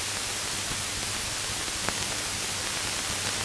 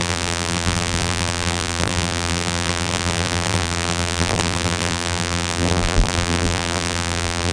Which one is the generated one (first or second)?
second